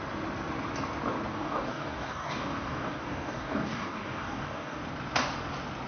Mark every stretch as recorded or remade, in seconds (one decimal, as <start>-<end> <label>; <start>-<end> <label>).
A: 0.0-1.3 recorded; 1.3-4.8 remade; 4.8-5.9 recorded